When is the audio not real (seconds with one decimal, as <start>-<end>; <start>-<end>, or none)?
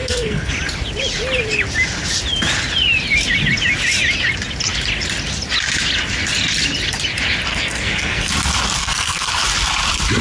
0.0-0.5; 7.5-8.3; 8.8-9.3